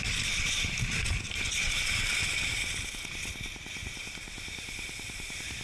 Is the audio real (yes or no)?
yes